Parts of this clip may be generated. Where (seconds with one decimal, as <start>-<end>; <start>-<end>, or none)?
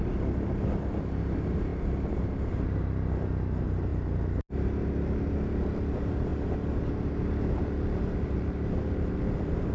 none